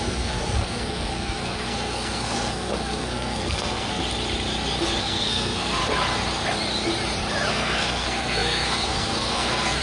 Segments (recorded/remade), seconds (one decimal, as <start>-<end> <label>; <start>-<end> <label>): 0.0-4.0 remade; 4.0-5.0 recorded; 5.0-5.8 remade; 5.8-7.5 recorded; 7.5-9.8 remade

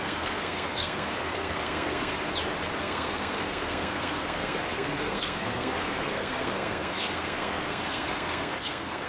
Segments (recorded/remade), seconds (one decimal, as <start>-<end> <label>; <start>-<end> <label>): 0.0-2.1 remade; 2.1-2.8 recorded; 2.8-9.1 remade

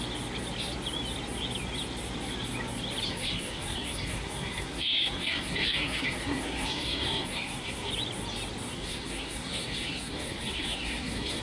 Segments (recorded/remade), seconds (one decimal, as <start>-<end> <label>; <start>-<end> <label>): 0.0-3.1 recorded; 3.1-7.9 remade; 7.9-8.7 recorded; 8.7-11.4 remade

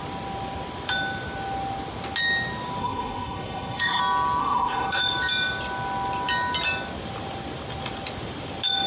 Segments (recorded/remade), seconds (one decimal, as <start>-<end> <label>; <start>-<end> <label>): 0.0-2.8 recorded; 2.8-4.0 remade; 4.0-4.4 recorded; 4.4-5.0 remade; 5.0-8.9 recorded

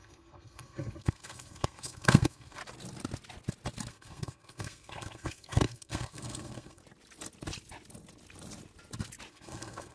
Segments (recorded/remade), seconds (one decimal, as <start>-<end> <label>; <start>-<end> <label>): 0.0-2.6 remade; 2.6-3.9 recorded; 3.9-6.8 remade; 6.8-9.3 recorded; 9.3-9.9 remade

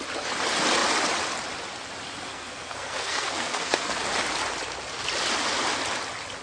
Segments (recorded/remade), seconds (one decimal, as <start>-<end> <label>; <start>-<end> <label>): 0.0-2.3 recorded; 2.3-4.0 remade; 4.0-6.4 recorded